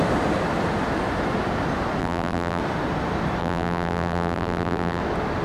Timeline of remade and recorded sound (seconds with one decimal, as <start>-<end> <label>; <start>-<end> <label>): 0.0-2.0 recorded; 2.0-2.6 remade; 2.6-3.4 recorded; 3.4-5.0 remade; 5.0-5.4 recorded